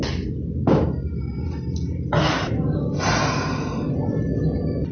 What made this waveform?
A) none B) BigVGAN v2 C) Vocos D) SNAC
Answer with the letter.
A